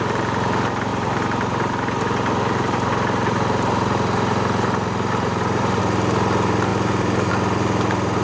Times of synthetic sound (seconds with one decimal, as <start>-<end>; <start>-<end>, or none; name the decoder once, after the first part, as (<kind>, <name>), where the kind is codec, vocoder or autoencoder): 0.9-5.8 (vocoder, BigVGAN v2); 6.7-7.3